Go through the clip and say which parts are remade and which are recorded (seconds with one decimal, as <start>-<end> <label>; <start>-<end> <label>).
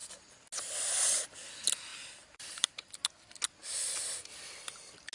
0.0-1.9 recorded; 1.9-2.7 remade; 2.7-3.6 recorded; 3.6-5.1 remade